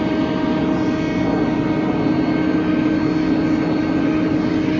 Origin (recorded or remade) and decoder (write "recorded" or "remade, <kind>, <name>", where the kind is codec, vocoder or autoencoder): recorded